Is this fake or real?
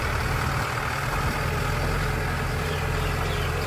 real